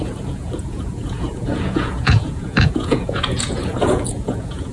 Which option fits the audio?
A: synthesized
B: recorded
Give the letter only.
A